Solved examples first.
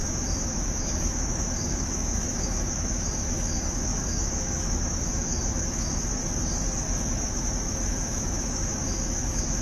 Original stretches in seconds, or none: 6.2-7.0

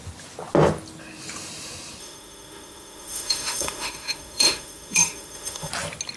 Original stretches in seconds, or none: 0.0-2.0; 5.7-6.2

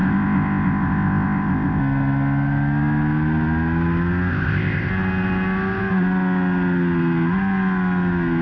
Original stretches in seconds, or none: 1.8-4.3; 4.9-8.4

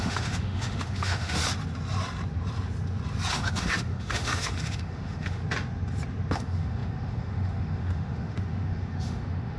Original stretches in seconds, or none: 1.4-3.3; 5.4-6.3

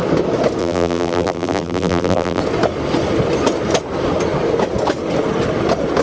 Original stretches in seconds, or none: 0.0-0.6; 2.4-6.0

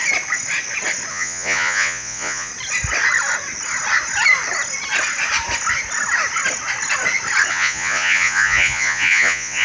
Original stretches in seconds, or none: 0.0-1.1; 2.5-7.5

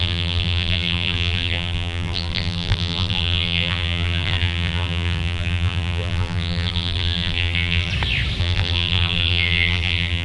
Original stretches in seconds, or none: 7.9-8.4